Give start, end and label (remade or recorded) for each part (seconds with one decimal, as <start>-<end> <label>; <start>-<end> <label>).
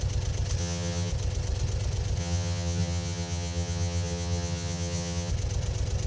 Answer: 0.0-0.6 recorded; 0.6-1.1 remade; 1.1-2.2 recorded; 2.2-5.3 remade; 5.3-6.1 recorded